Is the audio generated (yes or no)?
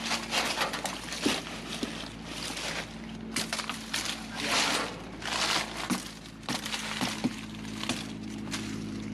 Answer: no